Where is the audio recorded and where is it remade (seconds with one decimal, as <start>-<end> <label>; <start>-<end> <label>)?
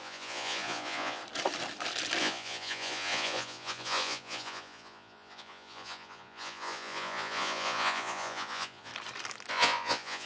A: 0.0-1.2 remade; 1.2-2.2 recorded; 2.2-8.9 remade; 8.9-9.5 recorded; 9.5-10.3 remade